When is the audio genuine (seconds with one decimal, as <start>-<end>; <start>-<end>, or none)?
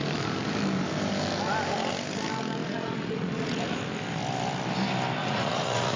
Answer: 0.0-2.6; 3.8-5.2